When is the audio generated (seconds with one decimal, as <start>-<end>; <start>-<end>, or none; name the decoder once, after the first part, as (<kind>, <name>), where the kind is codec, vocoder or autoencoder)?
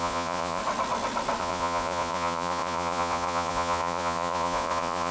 0.0-0.6 (vocoder, Vocos); 1.4-5.1